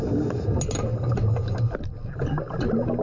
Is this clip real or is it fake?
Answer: real